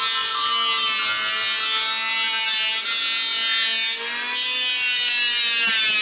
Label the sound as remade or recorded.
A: recorded